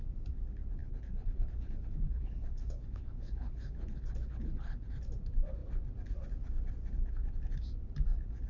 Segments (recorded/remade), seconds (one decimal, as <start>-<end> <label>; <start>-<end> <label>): 0.0-0.8 recorded; 0.8-4.9 remade; 4.9-8.5 recorded